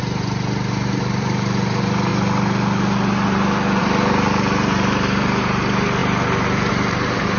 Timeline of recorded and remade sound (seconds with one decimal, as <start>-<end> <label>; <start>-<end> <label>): 0.0-2.1 remade; 2.1-3.8 recorded; 3.8-7.4 remade